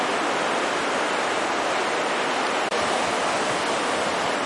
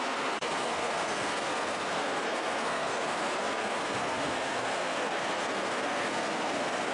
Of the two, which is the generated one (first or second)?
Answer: second